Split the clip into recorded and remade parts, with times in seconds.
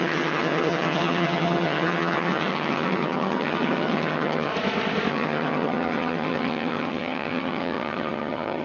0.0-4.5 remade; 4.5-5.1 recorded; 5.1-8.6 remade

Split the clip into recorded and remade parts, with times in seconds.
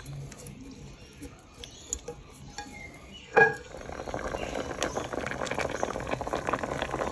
0.0-3.2 recorded; 3.2-3.7 remade; 3.7-7.1 recorded